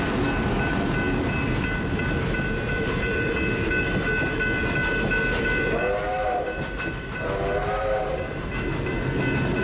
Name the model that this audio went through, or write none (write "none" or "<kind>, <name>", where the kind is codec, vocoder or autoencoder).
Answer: none